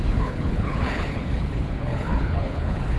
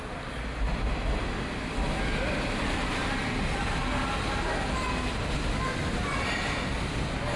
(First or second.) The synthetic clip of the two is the first